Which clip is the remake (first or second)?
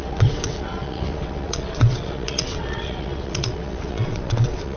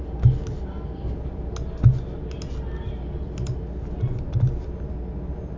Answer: first